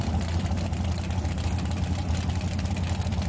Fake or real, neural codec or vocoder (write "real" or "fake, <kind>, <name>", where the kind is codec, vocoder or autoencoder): real